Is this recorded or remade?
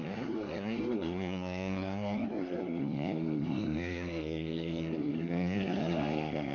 remade